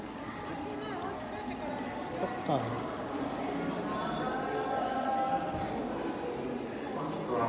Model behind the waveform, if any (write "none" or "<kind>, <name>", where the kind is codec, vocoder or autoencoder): none